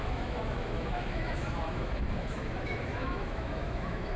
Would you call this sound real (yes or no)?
no